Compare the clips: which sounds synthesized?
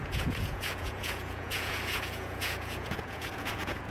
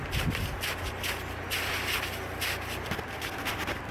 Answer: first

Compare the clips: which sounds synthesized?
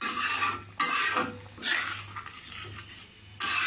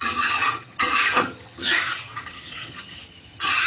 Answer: second